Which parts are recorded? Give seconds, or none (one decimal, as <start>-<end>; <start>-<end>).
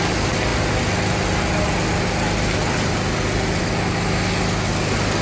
0.0-5.2